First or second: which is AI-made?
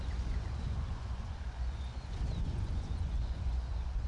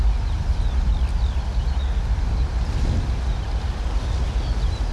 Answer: first